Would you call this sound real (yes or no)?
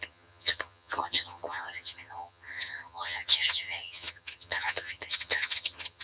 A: no